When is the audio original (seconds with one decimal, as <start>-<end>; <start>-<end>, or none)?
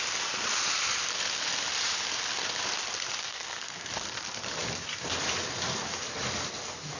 0.0-3.2; 3.9-7.0